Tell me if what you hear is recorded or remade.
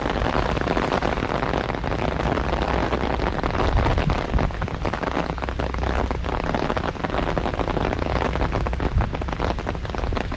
recorded